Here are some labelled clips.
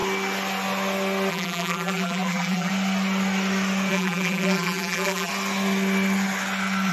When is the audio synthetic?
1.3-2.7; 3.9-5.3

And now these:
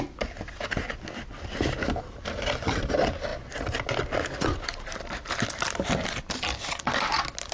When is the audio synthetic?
none

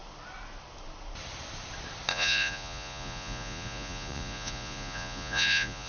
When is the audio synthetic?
2.1-5.9

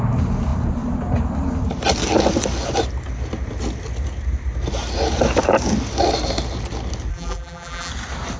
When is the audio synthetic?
7.1-7.9

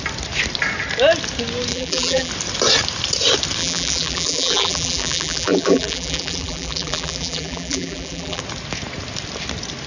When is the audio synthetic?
1.7-2.3; 3.6-8.4

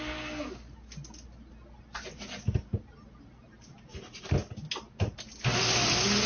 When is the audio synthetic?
none